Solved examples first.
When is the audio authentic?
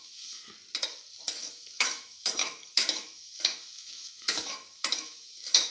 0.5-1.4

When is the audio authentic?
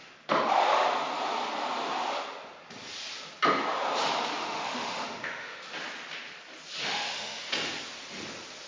0.0-4.4; 5.6-6.8; 7.5-8.7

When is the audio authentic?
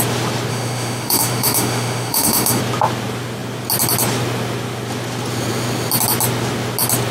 0.0-0.5; 2.6-7.1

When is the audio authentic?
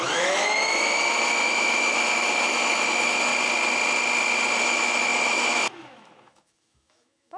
3.3-4.6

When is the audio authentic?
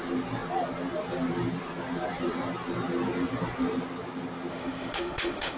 0.0-4.5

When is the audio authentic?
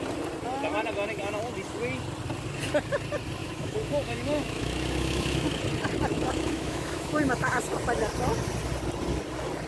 0.0-3.4; 5.5-6.1; 7.6-9.7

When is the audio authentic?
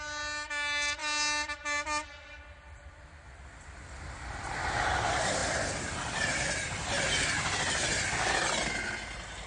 0.0-9.5